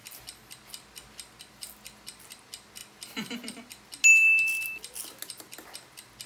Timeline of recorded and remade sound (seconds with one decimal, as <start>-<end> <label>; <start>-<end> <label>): 0.0-6.3 recorded